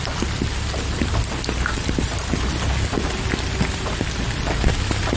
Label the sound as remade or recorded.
recorded